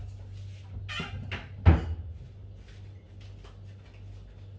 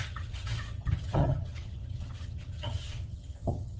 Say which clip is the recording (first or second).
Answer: first